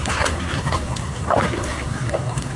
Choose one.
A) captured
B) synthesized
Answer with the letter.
B